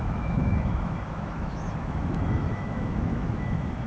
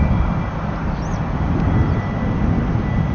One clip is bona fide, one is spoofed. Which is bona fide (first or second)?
second